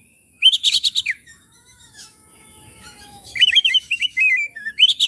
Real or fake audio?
fake